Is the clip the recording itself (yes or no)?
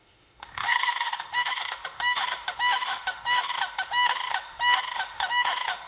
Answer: no